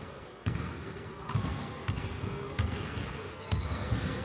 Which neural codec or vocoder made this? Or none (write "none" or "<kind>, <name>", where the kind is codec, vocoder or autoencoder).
codec, SNAC